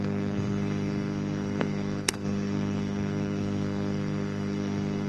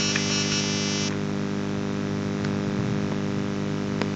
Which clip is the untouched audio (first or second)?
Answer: second